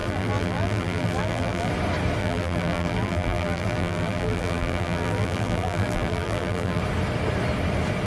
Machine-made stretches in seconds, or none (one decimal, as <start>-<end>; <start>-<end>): 0.0-1.7; 2.2-6.8